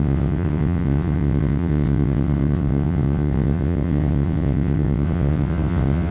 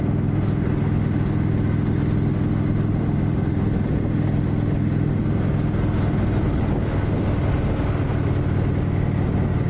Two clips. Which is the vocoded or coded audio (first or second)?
first